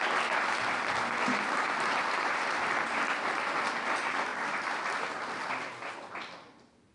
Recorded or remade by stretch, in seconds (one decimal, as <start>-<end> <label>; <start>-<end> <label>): 0.0-6.9 recorded